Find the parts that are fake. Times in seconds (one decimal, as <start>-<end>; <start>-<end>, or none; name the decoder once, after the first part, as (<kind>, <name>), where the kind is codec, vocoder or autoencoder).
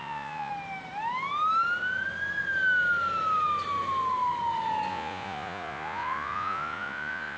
0.0-0.5 (vocoder, Vocos); 4.9-7.4